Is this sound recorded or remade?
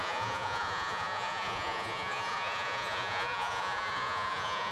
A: remade